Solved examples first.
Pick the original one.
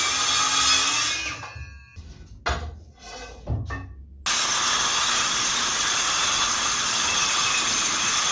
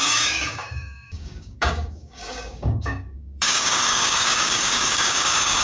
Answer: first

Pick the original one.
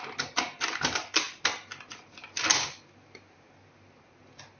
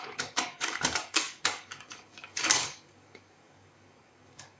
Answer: first